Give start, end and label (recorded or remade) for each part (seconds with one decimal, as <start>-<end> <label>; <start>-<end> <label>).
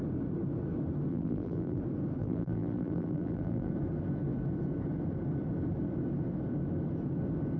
0.0-1.1 recorded; 1.1-1.8 remade; 1.8-2.2 recorded; 2.2-3.7 remade; 3.7-7.6 recorded